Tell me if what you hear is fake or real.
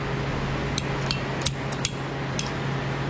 real